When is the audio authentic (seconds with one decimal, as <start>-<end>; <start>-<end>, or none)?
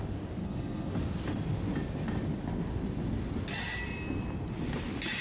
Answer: 0.0-0.4; 0.9-5.2